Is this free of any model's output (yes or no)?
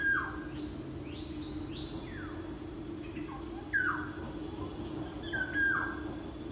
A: yes